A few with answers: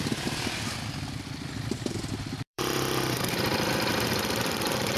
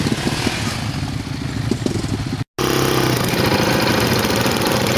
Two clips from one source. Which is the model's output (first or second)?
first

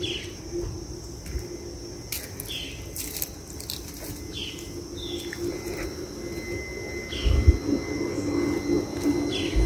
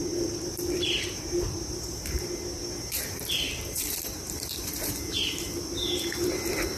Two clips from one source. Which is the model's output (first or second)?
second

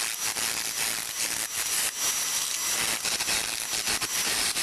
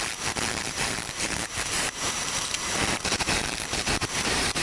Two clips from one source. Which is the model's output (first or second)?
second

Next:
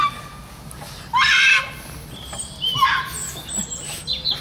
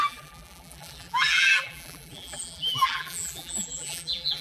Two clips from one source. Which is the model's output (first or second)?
second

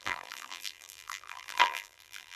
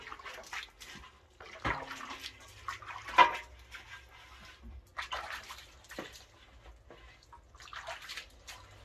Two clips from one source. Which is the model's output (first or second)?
first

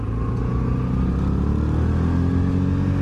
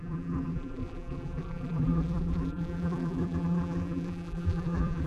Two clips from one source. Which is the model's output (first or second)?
second